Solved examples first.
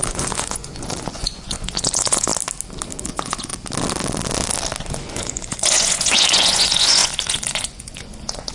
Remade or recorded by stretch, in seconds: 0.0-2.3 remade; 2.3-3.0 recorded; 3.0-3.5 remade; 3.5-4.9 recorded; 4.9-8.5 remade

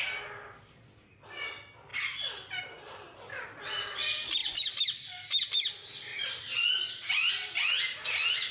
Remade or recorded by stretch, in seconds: 0.0-8.5 recorded

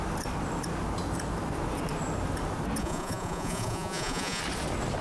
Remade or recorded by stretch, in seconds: 0.0-2.8 recorded; 2.8-4.4 remade; 4.4-5.0 recorded

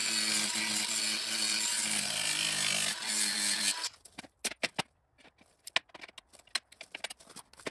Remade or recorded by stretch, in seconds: 0.0-7.7 recorded